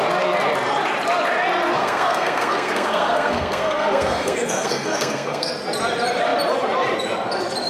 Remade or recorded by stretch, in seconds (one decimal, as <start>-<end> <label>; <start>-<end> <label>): 0.0-1.8 recorded; 1.8-5.5 remade; 5.5-7.7 recorded